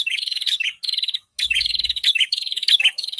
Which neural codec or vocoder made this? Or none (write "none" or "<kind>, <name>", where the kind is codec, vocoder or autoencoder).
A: codec, DAC